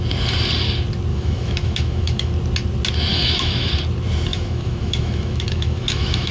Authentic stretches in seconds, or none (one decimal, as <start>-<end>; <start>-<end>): 0.0-1.1; 2.3-3.1; 3.7-4.3